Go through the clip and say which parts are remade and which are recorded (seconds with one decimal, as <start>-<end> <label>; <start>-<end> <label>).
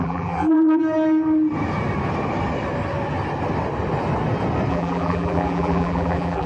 0.0-0.8 remade; 0.8-4.7 recorded; 4.7-6.5 remade